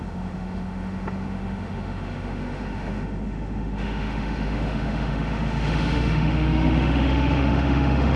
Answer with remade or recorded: remade